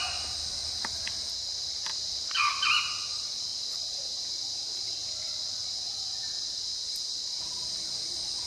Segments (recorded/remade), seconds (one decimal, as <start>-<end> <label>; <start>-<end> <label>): 0.0-1.9 recorded; 1.9-2.7 remade; 2.7-3.5 recorded; 3.5-4.3 remade; 4.3-5.6 recorded; 5.6-6.3 remade; 6.3-8.5 recorded